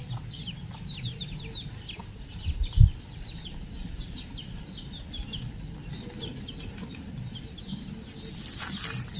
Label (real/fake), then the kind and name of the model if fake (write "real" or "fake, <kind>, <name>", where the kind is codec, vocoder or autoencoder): real